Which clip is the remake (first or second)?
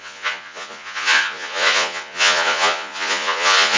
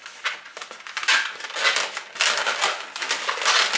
first